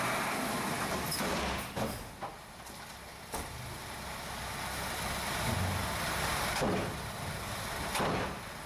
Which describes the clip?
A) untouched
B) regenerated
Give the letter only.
A